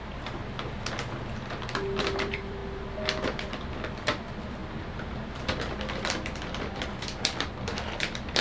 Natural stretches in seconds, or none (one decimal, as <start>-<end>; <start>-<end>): 0.4-2.0; 2.6-3.5